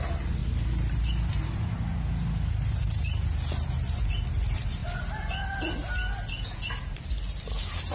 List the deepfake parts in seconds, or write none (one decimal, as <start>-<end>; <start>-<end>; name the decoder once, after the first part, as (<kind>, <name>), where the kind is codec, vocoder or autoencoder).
none